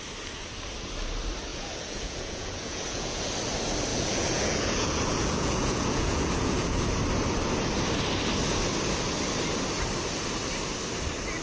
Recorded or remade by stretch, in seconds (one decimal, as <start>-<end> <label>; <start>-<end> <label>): 0.0-1.5 recorded; 1.5-3.2 remade; 3.2-3.9 recorded; 3.9-6.8 remade; 6.8-11.4 recorded